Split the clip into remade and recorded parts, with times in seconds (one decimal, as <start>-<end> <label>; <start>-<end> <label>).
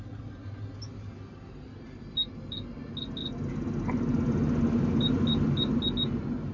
0.0-6.5 recorded